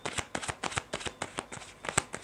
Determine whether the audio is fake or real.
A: real